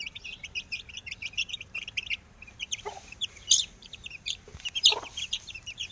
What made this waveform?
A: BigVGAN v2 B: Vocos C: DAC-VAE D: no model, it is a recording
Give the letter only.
A